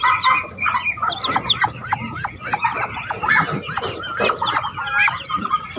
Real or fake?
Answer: real